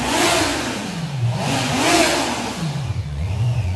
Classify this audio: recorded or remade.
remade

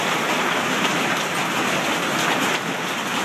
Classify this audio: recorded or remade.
recorded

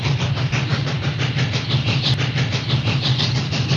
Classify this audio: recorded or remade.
recorded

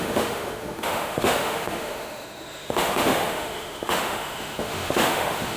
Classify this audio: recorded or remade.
remade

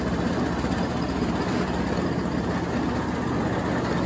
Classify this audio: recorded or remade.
recorded